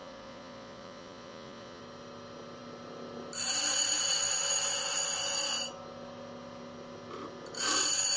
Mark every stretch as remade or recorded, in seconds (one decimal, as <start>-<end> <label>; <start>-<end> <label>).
0.0-1.8 remade; 1.8-8.2 recorded